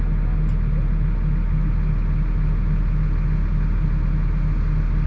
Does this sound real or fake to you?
real